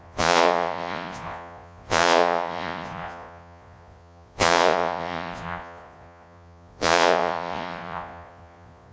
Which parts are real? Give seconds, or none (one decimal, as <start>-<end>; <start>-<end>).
none